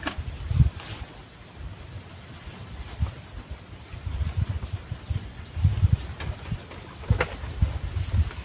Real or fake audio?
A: real